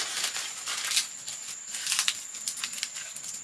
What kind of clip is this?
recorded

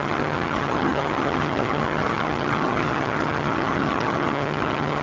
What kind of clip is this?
remade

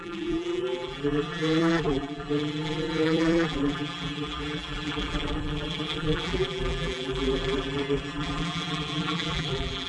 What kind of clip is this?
remade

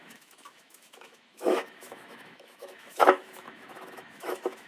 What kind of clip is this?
remade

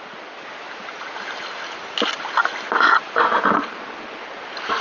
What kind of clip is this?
recorded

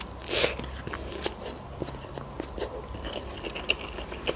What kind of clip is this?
recorded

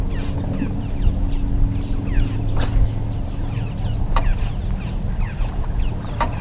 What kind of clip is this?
recorded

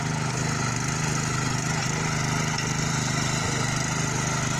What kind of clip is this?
recorded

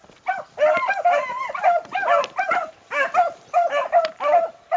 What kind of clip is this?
recorded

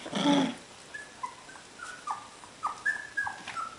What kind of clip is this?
recorded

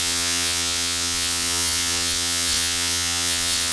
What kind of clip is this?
remade